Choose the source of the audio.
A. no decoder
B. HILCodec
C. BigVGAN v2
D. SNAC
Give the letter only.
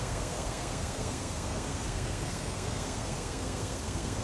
D